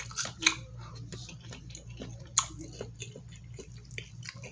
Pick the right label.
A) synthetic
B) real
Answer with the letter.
B